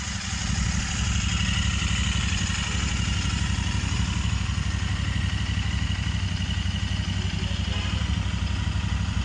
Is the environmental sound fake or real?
real